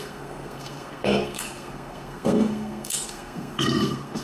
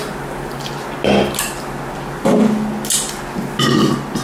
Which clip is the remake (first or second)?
first